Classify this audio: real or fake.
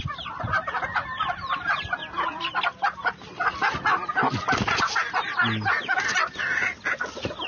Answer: real